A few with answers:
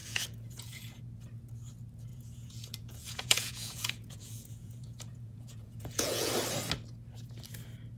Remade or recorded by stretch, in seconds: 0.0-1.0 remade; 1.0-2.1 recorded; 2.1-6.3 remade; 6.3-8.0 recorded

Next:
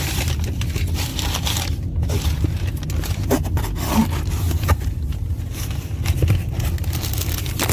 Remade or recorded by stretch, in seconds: 0.0-7.7 recorded